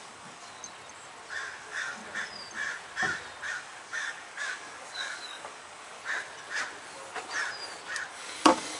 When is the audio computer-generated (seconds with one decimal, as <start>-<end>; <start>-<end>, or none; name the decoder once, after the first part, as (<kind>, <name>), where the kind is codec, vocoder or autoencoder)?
0.0-0.6 (codec, DAC); 1.6-2.0; 3.5-6.0; 8.1-8.8